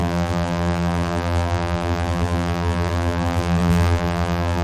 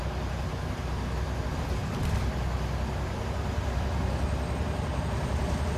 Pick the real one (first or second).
second